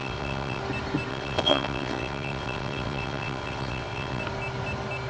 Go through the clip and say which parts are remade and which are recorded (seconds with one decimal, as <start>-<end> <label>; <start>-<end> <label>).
0.0-0.6 remade; 0.6-1.1 recorded; 1.1-4.2 remade; 4.2-5.1 recorded